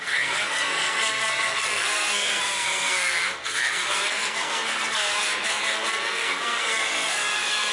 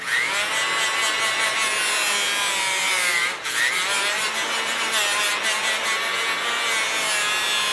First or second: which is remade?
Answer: first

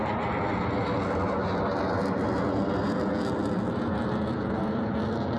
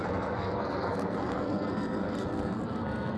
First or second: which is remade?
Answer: second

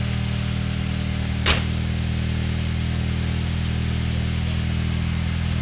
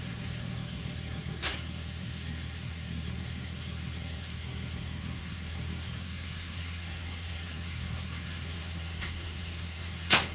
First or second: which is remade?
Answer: second